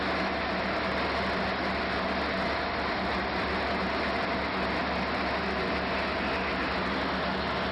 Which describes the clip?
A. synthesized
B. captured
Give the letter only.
B